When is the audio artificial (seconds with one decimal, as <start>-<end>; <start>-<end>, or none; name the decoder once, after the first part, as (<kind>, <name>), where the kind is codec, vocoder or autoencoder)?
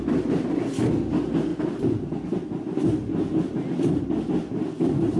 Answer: 1.5-4.0 (vocoder, BigVGAN v2)